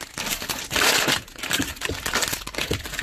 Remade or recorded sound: recorded